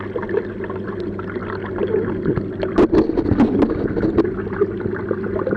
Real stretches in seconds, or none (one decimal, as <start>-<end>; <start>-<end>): 0.0-5.6

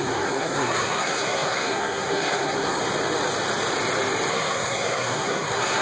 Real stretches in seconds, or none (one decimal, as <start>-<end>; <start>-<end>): 2.8-4.3

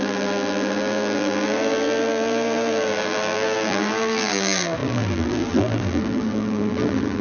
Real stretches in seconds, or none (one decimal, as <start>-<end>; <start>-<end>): none

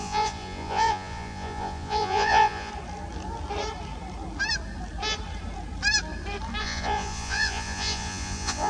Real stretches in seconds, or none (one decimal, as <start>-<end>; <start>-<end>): 2.7-6.6